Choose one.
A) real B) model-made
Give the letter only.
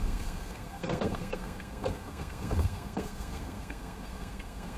B